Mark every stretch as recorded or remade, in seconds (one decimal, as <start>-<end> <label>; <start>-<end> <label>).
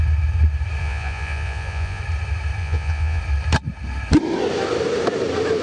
0.0-0.8 recorded; 0.8-2.0 remade; 2.0-2.6 recorded; 2.6-3.2 remade; 3.2-5.6 recorded